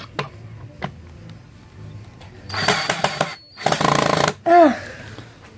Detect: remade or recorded recorded